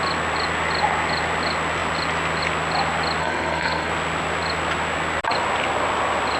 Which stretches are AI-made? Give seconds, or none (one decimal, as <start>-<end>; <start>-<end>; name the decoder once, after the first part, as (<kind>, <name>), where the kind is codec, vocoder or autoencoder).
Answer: 3.2-3.9 (codec, SNAC)